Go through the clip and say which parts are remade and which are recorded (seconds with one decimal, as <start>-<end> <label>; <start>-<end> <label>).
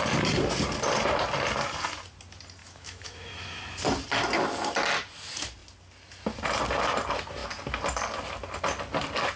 0.0-2.6 recorded; 2.6-3.6 remade; 3.6-9.4 recorded